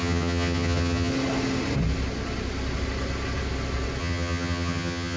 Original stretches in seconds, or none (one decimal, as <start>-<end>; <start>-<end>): 1.1-4.0